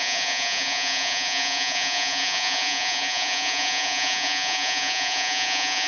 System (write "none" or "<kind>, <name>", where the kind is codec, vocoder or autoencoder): vocoder, Vocos